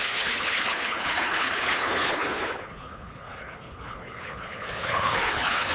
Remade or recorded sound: remade